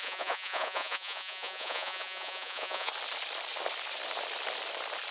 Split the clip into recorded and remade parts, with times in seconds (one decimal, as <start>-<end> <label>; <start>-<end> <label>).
0.0-2.9 remade; 2.9-5.1 recorded